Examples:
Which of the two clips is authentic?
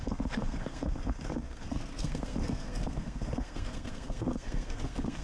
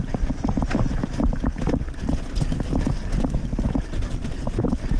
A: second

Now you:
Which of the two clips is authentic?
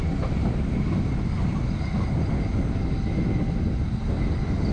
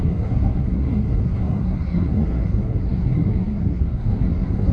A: first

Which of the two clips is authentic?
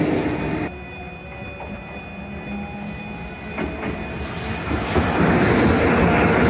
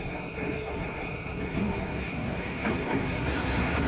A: first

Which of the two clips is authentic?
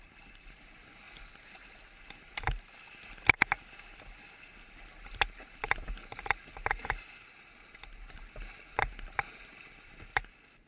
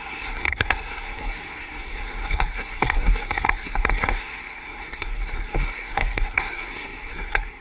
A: first